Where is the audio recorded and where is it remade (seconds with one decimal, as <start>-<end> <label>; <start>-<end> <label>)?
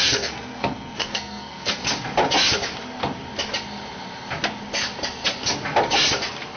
0.0-1.8 remade; 1.8-6.6 recorded